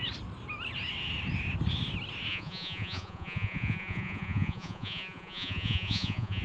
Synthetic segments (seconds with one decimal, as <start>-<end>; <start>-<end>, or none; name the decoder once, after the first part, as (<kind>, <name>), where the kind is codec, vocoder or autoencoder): 2.3-6.4 (vocoder, Vocos)